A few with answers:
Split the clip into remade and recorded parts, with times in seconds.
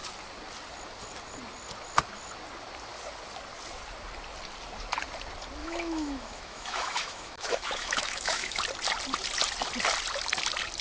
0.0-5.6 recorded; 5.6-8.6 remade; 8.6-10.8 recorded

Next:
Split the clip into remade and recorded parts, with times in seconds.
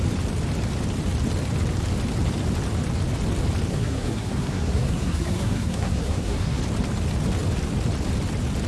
0.0-3.7 recorded; 3.7-6.6 remade; 6.6-8.7 recorded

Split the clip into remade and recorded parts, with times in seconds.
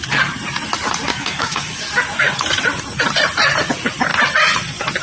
0.0-1.1 recorded; 1.1-1.8 remade; 1.8-5.0 recorded